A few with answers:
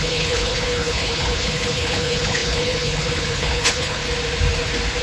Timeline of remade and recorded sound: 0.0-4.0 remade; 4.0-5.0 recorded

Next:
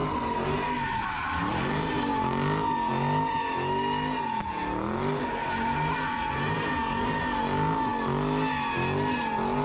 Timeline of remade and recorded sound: 0.0-9.6 recorded